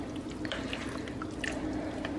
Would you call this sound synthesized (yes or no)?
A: no